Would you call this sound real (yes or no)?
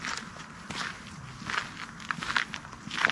yes